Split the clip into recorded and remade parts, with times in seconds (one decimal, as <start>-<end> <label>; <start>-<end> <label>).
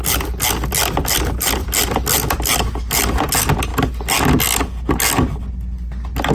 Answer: 0.0-6.3 recorded